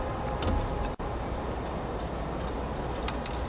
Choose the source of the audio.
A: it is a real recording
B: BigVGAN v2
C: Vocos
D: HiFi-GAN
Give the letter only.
A